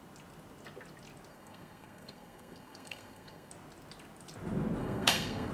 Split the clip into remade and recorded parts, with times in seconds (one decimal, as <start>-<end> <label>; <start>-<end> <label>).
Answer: 0.0-1.3 recorded; 1.3-3.5 remade; 3.5-4.8 recorded; 4.8-5.5 remade